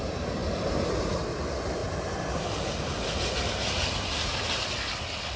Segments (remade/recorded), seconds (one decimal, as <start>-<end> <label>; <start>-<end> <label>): 0.0-5.4 recorded